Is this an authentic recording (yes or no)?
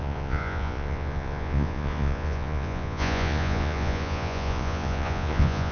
no